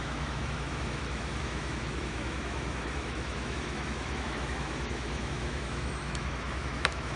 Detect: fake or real fake